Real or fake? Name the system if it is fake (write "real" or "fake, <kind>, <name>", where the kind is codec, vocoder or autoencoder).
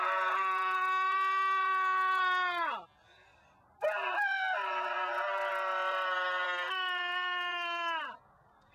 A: real